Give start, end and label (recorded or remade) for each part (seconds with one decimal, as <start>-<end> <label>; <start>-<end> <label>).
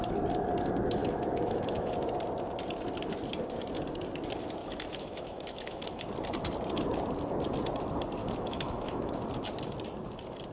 0.0-1.0 recorded; 1.0-1.9 remade; 1.9-4.6 recorded; 4.6-6.0 remade; 6.0-8.2 recorded; 8.2-9.1 remade; 9.1-10.5 recorded